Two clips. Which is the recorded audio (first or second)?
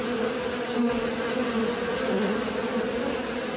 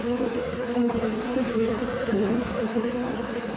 first